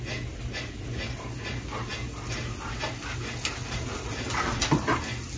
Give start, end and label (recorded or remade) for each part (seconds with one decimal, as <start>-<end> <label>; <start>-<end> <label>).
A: 0.0-5.4 recorded